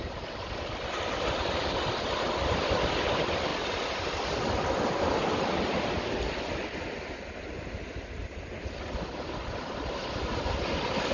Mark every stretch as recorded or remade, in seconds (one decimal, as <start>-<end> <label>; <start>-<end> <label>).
0.0-11.1 recorded